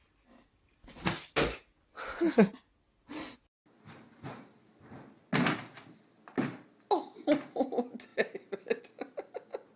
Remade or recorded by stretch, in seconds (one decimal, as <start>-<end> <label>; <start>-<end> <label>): 0.0-9.8 recorded